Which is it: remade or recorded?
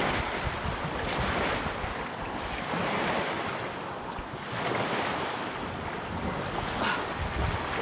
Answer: recorded